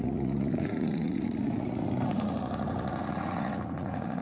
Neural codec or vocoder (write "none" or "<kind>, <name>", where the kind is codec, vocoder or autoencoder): vocoder, Vocos